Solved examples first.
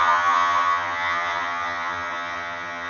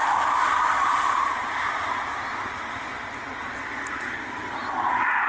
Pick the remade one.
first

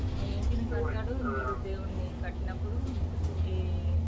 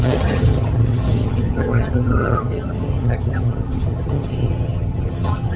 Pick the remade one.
second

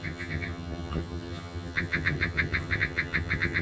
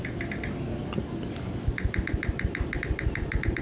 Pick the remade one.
first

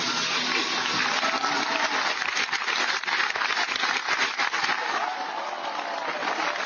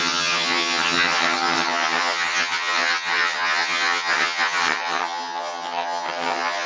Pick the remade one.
second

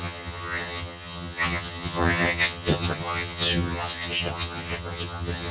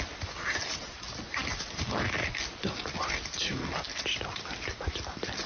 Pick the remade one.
first